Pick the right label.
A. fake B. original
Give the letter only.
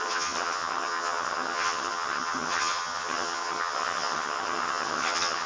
A